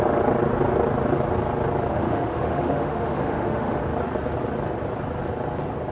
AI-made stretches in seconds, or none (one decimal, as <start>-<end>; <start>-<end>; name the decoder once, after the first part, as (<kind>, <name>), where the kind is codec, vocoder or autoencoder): 1.9-3.8 (autoencoder, DAC-VAE)